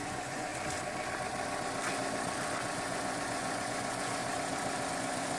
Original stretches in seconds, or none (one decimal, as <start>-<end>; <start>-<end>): 0.5-2.6; 4.2-4.9